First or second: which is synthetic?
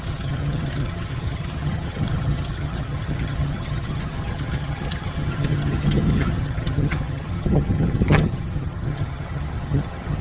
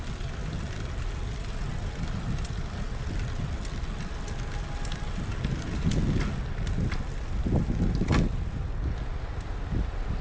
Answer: first